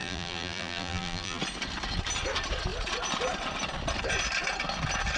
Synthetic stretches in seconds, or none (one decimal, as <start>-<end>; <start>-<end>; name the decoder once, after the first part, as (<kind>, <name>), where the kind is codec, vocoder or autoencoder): 0.0-1.4 (vocoder, BigVGAN v2)